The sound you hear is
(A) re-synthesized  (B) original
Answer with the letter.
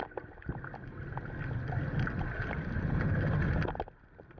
B